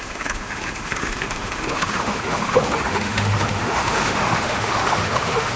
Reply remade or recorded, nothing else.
remade